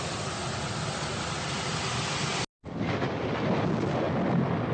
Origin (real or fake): real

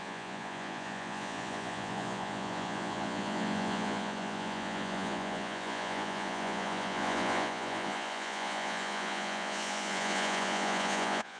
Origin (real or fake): fake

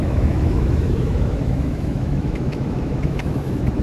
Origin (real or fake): fake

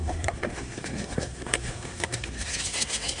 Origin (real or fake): fake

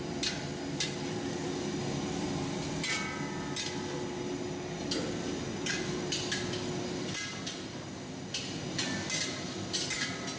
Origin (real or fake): real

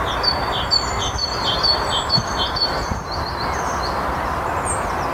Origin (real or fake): real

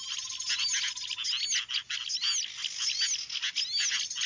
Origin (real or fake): real